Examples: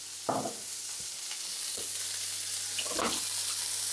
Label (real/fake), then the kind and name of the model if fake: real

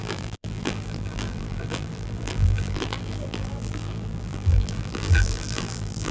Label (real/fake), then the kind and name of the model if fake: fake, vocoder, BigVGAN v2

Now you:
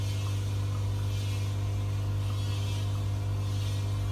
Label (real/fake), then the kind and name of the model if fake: real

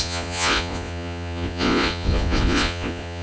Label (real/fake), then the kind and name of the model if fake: fake, vocoder, Vocos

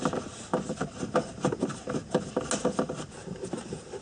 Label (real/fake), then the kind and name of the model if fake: real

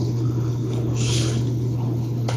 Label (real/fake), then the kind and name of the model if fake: fake, codec, HILCodec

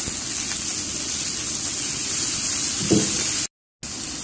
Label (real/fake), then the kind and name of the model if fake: real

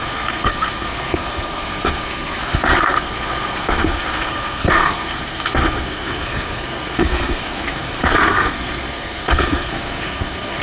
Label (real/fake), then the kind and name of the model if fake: fake, codec, SNAC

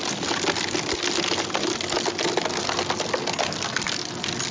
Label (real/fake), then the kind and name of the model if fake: real